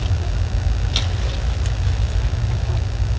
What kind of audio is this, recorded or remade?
recorded